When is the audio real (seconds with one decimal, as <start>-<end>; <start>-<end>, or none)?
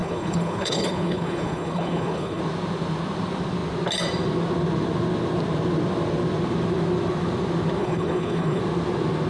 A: 2.4-7.8; 8.6-9.3